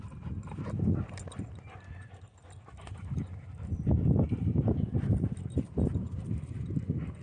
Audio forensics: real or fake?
real